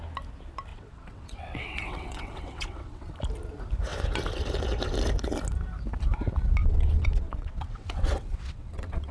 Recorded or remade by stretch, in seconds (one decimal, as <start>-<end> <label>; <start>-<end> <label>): 0.0-0.7 recorded; 0.7-3.1 remade; 3.1-6.6 recorded; 6.6-9.1 remade